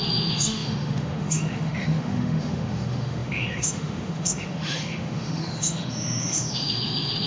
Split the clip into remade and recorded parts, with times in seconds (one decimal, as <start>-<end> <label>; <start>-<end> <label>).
0.0-7.3 remade